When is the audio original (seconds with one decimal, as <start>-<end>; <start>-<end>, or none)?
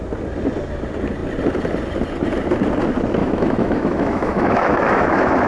0.0-3.2